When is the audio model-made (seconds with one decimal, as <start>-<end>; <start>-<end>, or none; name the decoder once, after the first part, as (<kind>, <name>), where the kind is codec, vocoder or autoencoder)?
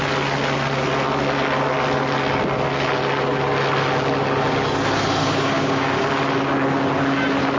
5.2-6.0 (codec, DAC)